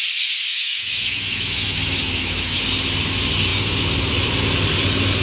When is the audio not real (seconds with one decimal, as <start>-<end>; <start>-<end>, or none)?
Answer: 0.5-2.6

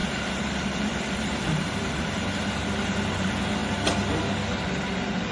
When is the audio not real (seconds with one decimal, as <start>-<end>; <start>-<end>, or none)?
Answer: 1.4-3.6; 4.6-5.3

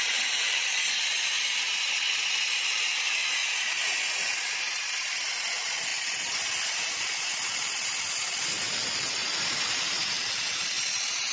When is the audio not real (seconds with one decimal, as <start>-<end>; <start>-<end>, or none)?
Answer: 3.4-4.8

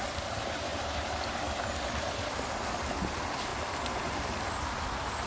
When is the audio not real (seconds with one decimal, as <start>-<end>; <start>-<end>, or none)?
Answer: none

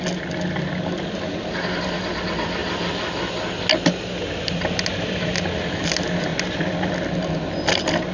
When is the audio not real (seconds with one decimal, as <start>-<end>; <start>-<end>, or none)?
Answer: none

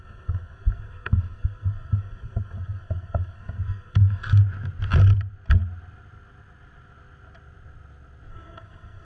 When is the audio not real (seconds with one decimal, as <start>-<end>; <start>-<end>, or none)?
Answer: 0.0-4.4; 8.3-9.0

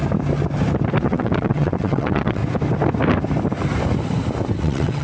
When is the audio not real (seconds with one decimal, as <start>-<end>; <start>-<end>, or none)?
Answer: 1.0-2.4; 4.6-5.0